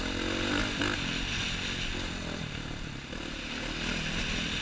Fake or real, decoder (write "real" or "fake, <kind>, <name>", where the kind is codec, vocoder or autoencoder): real